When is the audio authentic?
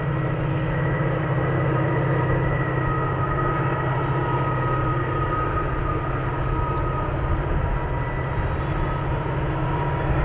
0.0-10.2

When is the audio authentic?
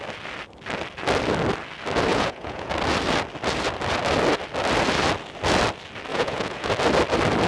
0.0-2.1; 2.7-6.1; 6.7-7.5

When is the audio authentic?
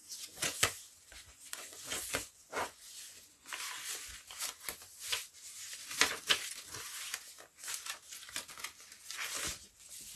3.5-10.2